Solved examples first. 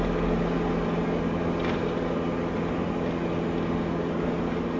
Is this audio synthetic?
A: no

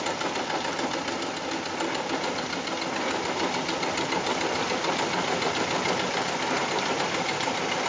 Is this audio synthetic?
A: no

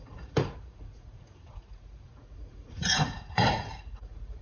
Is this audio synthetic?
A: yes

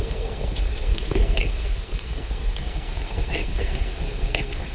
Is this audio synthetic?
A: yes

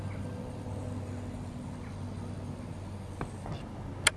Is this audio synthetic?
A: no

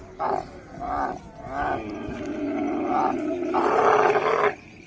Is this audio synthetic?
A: no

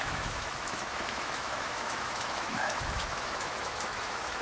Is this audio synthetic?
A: yes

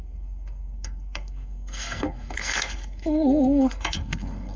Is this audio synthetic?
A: yes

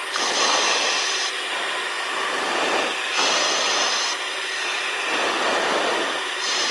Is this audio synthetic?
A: no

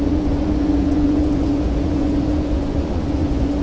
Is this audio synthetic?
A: yes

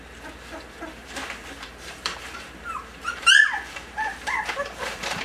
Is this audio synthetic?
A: yes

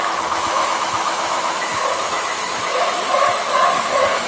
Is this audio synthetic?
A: yes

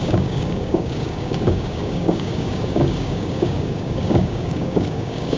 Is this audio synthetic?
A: yes